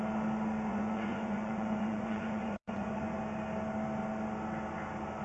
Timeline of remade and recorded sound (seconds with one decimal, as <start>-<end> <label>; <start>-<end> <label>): 0.0-0.7 recorded; 0.7-3.2 remade; 3.2-5.2 recorded